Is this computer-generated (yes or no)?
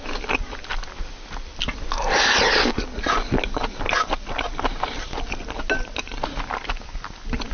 no